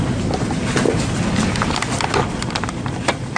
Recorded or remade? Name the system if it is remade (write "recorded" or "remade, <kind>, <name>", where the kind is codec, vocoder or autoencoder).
recorded